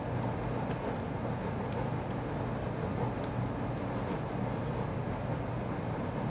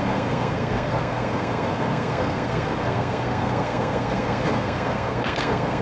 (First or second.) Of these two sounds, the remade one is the second